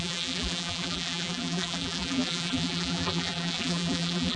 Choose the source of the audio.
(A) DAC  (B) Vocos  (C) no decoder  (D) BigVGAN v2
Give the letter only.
D